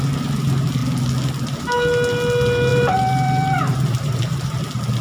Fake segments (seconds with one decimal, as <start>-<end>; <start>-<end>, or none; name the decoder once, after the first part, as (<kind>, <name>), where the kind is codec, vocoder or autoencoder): 2.7-4.6 (vocoder, BigVGAN v2)